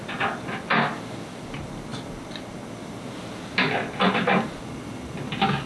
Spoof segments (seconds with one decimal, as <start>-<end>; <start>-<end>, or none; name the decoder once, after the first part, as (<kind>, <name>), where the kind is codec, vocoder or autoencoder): none